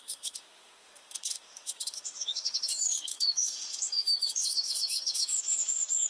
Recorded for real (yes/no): no